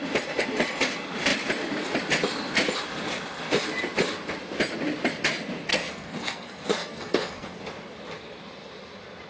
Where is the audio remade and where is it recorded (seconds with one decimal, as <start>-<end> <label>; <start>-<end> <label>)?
0.0-5.7 recorded; 5.7-7.6 remade; 7.6-9.3 recorded

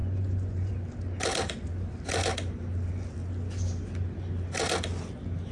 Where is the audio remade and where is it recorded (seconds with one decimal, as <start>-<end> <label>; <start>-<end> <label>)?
0.0-0.7 remade; 0.7-5.5 recorded

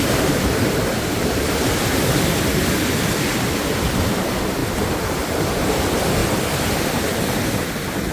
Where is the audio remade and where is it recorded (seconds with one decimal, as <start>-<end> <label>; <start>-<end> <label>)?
0.0-4.6 remade; 4.6-5.5 recorded; 5.5-6.2 remade; 6.2-8.1 recorded

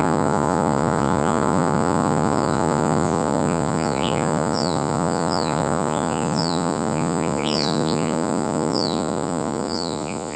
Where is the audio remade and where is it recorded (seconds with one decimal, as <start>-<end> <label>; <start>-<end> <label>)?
0.0-10.4 remade

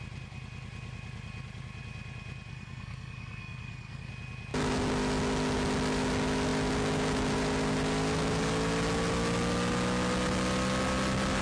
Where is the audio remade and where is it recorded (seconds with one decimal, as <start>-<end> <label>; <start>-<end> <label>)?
0.0-2.5 recorded; 2.5-4.1 remade; 4.1-11.4 recorded

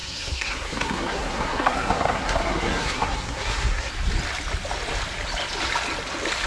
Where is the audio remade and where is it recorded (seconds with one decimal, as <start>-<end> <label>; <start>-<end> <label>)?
0.0-3.9 remade; 3.9-6.5 recorded